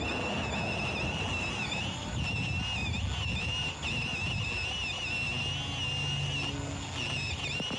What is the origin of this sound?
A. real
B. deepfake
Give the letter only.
A